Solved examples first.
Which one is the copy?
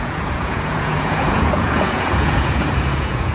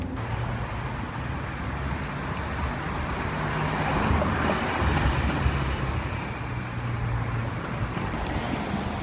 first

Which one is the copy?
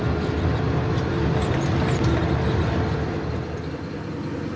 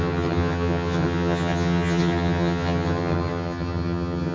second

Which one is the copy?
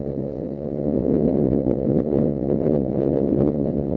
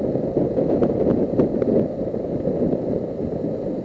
first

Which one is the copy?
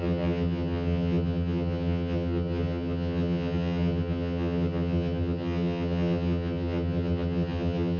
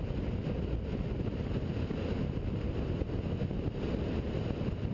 first